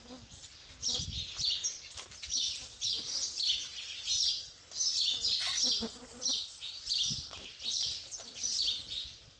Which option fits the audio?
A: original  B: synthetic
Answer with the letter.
A